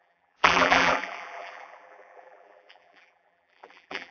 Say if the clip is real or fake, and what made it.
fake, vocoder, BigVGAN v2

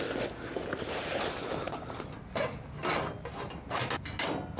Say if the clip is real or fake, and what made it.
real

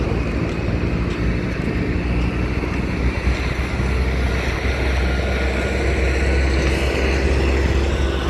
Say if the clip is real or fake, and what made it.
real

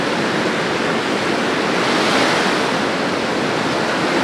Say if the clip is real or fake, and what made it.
real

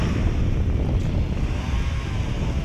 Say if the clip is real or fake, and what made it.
real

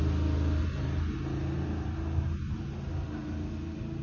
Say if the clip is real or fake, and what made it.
real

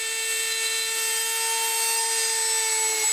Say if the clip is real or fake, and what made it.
real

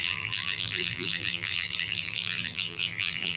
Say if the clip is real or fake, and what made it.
fake, vocoder, BigVGAN v2